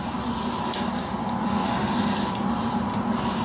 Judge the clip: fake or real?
real